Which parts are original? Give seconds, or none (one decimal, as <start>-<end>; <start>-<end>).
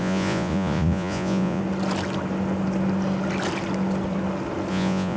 1.6-4.7